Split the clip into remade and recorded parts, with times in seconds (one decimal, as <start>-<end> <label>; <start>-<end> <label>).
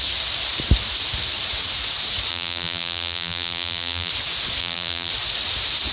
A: 0.0-2.3 recorded; 2.3-4.1 remade; 4.1-4.6 recorded; 4.6-5.1 remade; 5.1-5.9 recorded